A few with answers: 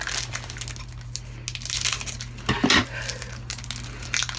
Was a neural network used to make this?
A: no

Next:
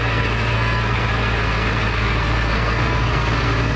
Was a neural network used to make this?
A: yes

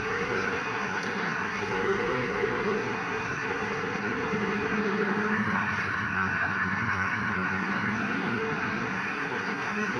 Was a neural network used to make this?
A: yes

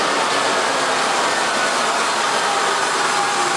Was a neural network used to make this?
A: no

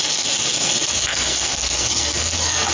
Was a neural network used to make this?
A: yes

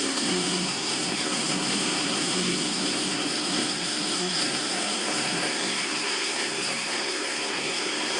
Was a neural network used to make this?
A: yes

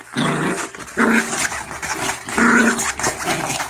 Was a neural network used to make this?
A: no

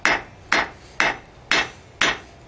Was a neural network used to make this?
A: no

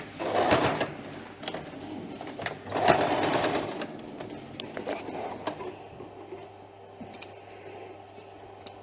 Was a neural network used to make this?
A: no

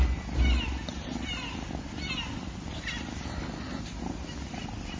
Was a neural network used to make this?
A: no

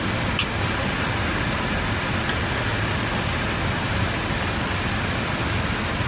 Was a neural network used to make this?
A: no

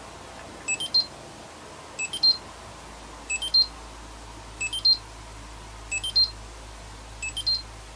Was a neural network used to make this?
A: no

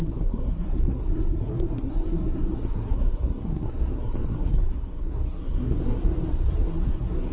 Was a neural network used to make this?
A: yes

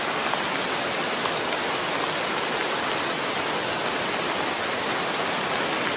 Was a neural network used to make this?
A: no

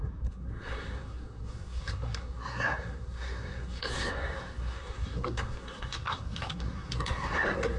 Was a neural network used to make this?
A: yes